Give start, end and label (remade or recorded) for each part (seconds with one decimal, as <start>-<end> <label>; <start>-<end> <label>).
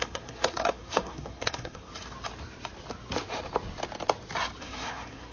0.0-1.9 remade; 1.9-4.6 recorded; 4.6-5.3 remade